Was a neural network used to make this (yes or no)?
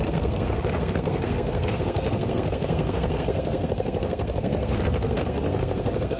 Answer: yes